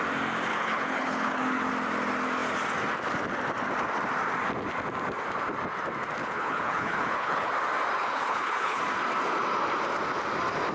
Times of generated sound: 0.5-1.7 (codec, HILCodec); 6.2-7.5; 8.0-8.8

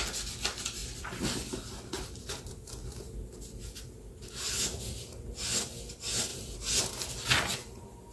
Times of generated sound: none

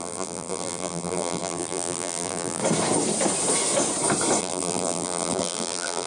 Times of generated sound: 0.0-2.6 (vocoder, BigVGAN v2); 4.4-6.1

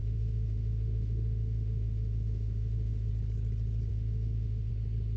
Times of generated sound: 0.0-3.1 (autoencoder, DAC-VAE); 3.9-4.7

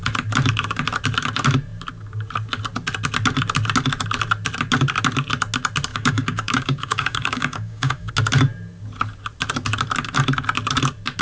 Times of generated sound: 5.9-8.1 (codec, DAC)

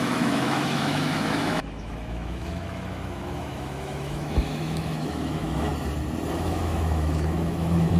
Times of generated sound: 0.0-5.7 (autoencoder, DAC-VAE); 6.3-8.0